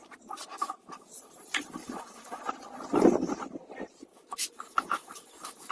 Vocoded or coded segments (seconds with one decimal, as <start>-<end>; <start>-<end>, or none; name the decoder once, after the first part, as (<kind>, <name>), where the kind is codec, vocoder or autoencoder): 0.5-1.1 (autoencoder, DAC-VAE); 1.8-2.4; 4.1-5.7